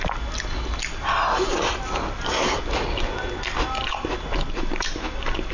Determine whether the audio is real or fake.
real